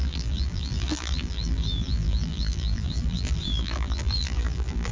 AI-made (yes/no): yes